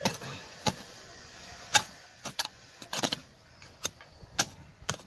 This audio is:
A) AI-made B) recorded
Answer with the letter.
A